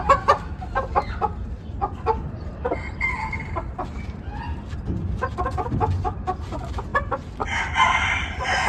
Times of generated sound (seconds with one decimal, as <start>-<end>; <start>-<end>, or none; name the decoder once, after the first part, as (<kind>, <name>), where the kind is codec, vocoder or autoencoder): none